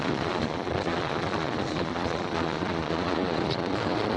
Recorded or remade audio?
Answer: remade